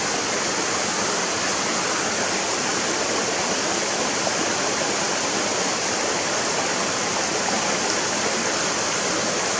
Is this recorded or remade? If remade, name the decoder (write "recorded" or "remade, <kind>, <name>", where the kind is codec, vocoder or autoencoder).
recorded